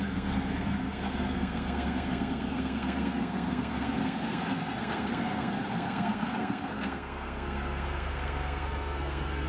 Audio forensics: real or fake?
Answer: fake